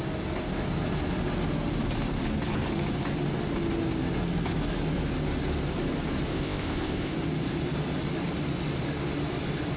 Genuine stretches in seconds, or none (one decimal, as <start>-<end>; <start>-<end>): 0.0-6.3; 7.1-9.8